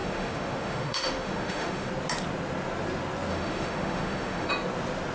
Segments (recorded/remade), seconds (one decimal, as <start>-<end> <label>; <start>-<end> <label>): 0.0-1.9 remade; 1.9-3.3 recorded; 3.3-4.5 remade; 4.5-5.1 recorded